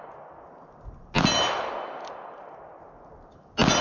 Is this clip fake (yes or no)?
no